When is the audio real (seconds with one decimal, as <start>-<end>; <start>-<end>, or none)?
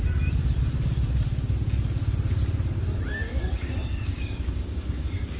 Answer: 0.0-3.3